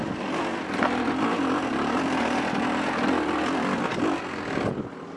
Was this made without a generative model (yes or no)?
yes